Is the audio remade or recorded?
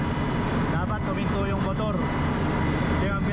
recorded